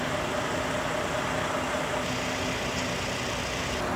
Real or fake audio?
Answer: real